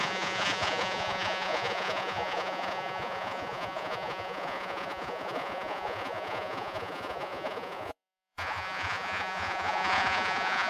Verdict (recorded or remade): remade